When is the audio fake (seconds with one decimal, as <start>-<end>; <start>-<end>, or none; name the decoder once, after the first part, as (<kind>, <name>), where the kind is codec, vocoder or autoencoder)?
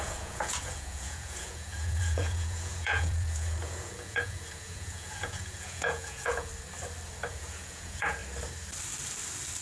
0.0-6.5 (vocoder, Vocos); 7.3-8.2